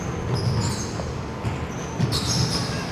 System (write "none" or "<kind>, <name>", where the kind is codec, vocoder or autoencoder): none